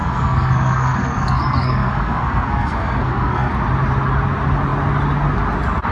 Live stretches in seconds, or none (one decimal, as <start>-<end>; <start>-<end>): 3.5-5.9